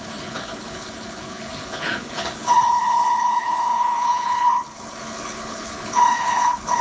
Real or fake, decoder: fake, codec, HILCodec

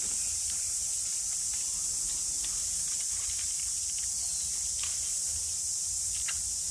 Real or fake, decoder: real